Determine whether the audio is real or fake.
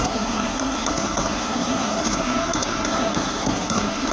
fake